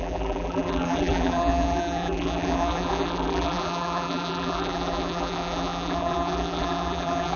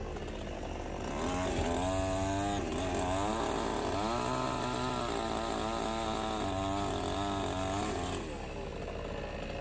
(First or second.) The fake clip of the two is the first